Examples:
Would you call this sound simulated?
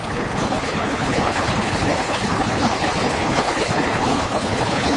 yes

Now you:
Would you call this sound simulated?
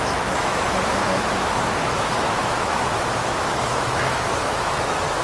yes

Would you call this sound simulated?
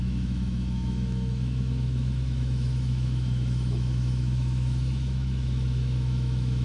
yes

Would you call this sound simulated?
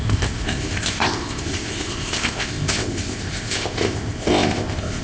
yes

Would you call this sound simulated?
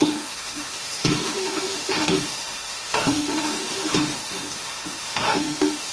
yes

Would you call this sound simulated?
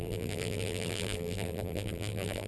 yes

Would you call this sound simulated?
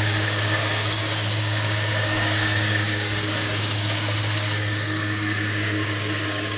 yes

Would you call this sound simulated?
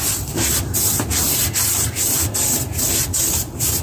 no